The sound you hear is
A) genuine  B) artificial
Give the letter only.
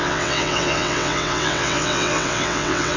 B